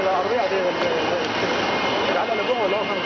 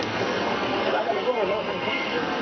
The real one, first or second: first